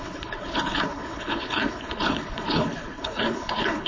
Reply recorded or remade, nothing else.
remade